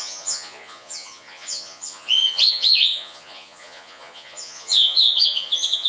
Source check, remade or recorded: remade